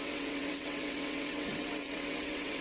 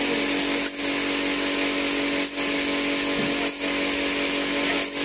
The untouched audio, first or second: second